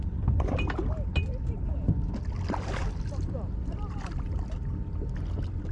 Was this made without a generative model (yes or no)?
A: yes